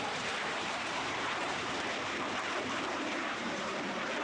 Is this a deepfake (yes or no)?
yes